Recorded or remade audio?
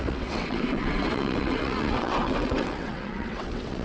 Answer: remade